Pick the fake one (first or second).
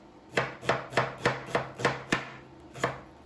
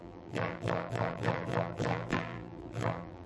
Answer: second